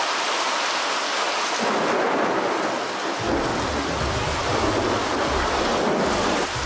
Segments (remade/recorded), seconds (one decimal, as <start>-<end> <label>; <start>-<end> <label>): 0.0-6.7 recorded